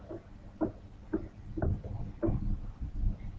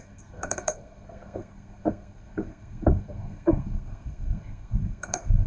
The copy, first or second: second